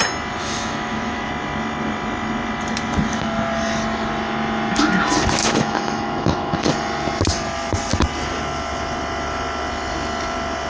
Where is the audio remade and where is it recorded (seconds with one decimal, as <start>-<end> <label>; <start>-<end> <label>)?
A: 0.0-0.4 recorded; 0.4-1.3 remade; 1.3-5.4 recorded; 5.4-6.7 remade; 6.7-10.7 recorded